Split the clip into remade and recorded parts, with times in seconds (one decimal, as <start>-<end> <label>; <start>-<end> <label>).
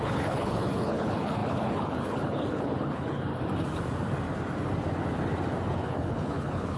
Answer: 0.0-3.3 remade; 3.3-5.7 recorded; 5.7-6.8 remade